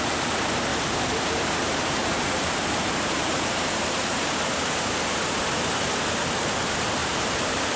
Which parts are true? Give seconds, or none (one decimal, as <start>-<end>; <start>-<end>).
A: 0.0-0.7; 5.4-7.0